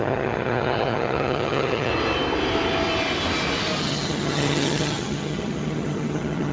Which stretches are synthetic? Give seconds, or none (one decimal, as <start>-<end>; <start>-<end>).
0.0-1.9; 3.8-6.5

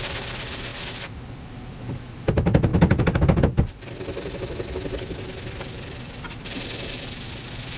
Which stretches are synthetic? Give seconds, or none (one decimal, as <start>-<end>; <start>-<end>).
0.0-0.7; 1.5-2.7; 3.6-7.8

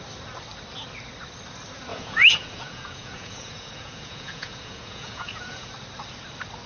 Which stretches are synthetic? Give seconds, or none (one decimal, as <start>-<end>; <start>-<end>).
1.9-5.7

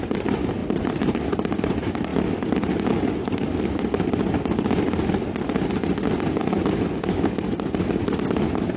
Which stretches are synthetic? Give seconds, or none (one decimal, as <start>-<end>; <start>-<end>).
none

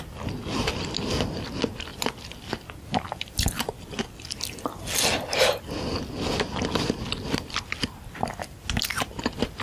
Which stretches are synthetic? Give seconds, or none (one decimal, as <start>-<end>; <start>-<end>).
1.9-4.3

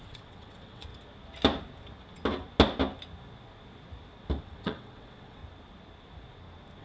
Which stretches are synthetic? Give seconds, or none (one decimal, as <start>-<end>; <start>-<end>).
0.0-0.9; 4.4-5.4

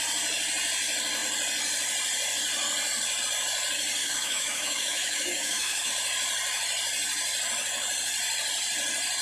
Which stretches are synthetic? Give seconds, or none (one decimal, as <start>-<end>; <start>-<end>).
4.0-5.9

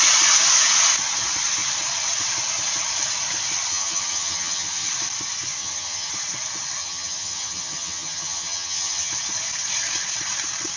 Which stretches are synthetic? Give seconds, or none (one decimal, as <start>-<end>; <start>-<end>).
3.7-4.9; 5.6-6.1; 6.8-9.1